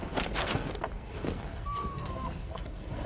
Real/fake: fake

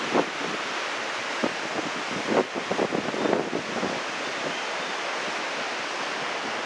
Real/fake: real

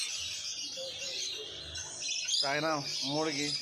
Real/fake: real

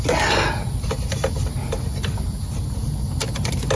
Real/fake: real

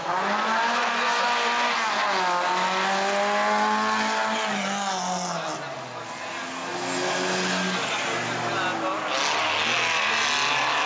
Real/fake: real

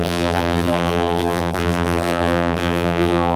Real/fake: fake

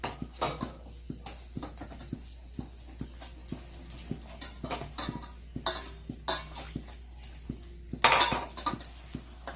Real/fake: real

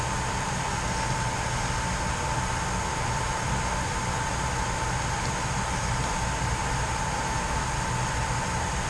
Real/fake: real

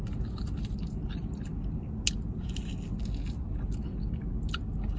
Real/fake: real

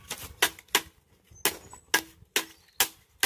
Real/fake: real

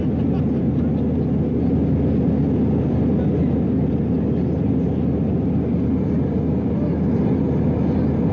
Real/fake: real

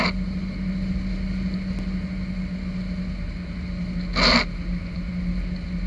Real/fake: real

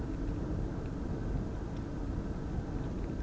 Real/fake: real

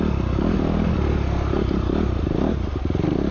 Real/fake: real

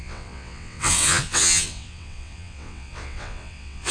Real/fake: fake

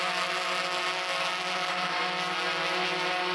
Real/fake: real